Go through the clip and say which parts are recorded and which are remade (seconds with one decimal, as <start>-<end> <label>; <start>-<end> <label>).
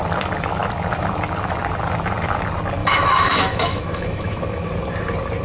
0.0-2.8 recorded; 2.8-4.7 remade; 4.7-5.4 recorded